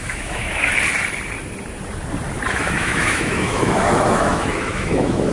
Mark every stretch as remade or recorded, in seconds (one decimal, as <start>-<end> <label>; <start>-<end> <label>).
0.0-0.7 remade; 0.7-2.5 recorded; 2.5-5.3 remade